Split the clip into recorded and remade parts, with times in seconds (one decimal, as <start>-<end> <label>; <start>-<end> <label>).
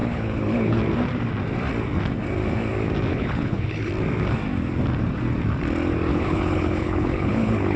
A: 0.0-0.8 remade; 0.8-3.1 recorded; 3.1-3.9 remade; 3.9-6.1 recorded; 6.1-7.8 remade